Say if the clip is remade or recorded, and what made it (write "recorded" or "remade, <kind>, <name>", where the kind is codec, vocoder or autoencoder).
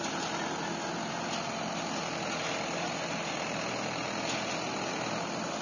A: recorded